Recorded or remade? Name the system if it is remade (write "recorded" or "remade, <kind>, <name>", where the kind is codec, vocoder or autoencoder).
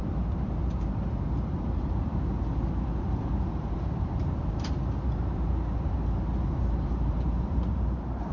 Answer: remade, vocoder, BigVGAN v2